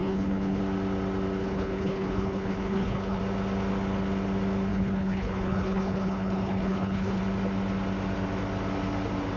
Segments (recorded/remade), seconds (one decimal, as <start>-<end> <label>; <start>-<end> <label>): 0.0-0.6 remade; 0.6-1.4 recorded; 1.4-3.2 remade; 3.2-4.7 recorded; 4.7-7.2 remade; 7.2-9.4 recorded